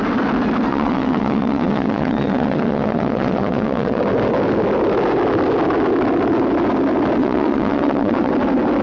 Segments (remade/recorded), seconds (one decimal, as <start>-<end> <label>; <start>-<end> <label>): 0.0-0.7 recorded; 0.7-4.0 remade; 4.0-7.2 recorded; 7.2-8.3 remade; 8.3-8.8 recorded